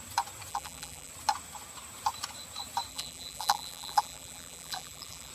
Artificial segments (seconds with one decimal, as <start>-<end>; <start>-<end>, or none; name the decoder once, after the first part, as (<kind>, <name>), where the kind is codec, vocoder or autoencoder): 0.5-1.1 (vocoder, BigVGAN v2); 2.9-5.3